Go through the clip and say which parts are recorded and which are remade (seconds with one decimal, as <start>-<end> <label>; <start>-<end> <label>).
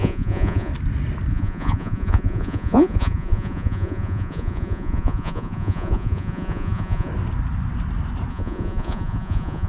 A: 0.0-0.7 remade; 0.7-1.3 recorded; 1.3-7.1 remade; 7.1-8.3 recorded; 8.3-9.7 remade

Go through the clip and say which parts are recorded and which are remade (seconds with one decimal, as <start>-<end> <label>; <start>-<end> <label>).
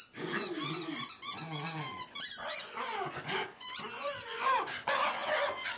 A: 0.0-5.8 remade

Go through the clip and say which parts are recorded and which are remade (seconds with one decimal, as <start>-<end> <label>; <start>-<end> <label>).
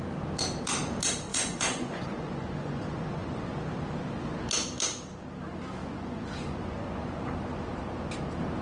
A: 0.0-1.3 recorded; 1.3-3.4 remade; 3.4-5.8 recorded; 5.8-7.3 remade; 7.3-8.6 recorded